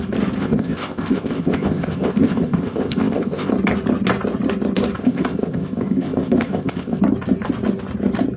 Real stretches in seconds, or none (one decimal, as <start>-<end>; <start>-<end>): 0.0-0.4; 3.5-5.0; 7.0-8.4

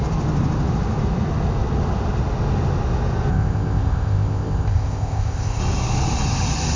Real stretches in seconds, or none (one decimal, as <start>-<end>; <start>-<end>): 0.0-3.3; 5.6-6.8

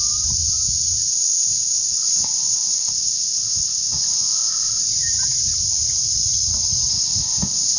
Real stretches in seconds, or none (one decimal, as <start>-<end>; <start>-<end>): 0.0-1.1; 4.8-6.9